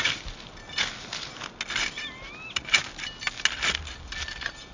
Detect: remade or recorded recorded